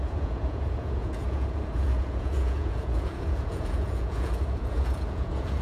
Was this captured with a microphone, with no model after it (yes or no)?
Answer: no